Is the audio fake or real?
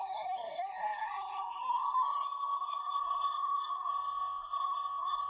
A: fake